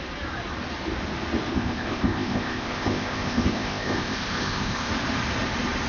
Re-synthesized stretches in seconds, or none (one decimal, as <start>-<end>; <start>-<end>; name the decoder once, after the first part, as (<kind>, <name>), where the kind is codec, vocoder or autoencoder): 1.5-4.9 (codec, ZipCodec)